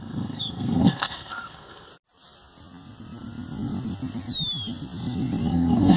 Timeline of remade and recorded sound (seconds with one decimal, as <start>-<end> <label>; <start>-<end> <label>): 0.0-1.9 remade; 1.9-5.5 recorded; 5.5-6.0 remade